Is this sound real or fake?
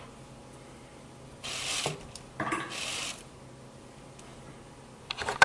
real